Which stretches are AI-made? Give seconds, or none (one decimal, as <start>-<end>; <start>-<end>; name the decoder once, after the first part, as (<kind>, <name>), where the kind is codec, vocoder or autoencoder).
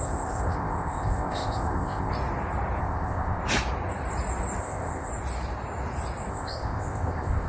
0.0-2.1 (codec, ZipCodec); 2.8-3.4; 4.6-5.1; 6.3-7.5